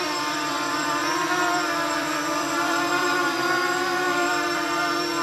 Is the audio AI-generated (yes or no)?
yes